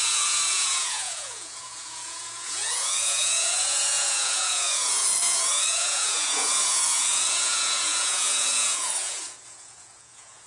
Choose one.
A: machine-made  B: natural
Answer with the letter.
A